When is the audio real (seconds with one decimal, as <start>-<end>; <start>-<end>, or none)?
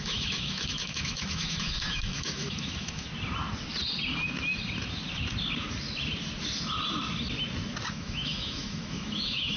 3.1-7.9